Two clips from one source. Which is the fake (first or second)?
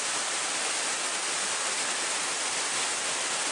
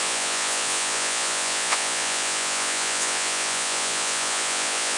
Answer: second